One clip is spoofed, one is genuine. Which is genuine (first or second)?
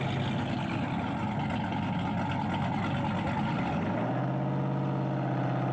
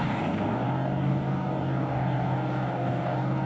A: first